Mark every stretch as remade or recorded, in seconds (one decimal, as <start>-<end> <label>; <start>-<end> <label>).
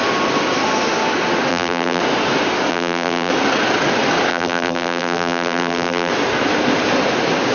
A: 0.0-1.5 recorded; 1.5-2.0 remade; 2.0-2.7 recorded; 2.7-3.3 remade; 3.3-4.3 recorded; 4.3-6.1 remade; 6.1-7.5 recorded